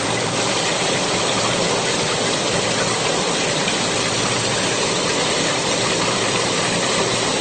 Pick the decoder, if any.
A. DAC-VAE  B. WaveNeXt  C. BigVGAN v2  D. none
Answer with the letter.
C